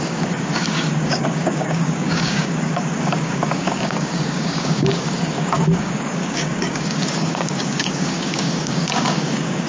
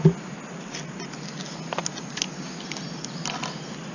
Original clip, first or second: second